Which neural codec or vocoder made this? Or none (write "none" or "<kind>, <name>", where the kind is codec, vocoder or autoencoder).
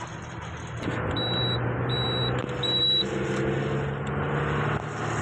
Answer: none